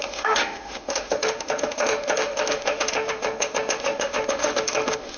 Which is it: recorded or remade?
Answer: remade